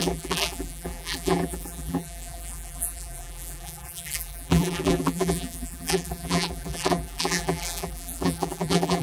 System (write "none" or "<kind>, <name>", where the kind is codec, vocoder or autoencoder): vocoder, BigVGAN v2